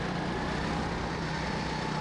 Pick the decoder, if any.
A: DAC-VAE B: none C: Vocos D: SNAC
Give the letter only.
B